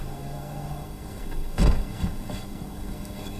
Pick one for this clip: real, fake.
fake